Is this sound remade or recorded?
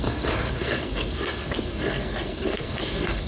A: remade